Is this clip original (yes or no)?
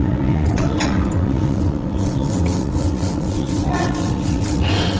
no